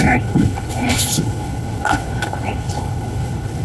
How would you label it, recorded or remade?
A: remade